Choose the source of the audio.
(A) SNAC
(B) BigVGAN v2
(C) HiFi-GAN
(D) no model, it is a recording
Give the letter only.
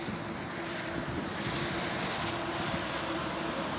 B